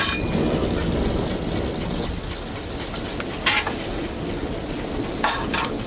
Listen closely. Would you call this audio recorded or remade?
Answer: recorded